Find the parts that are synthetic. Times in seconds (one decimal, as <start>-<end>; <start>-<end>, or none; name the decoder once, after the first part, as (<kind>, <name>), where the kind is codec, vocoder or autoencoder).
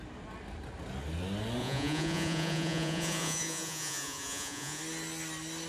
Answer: 1.6-4.8 (vocoder, Vocos)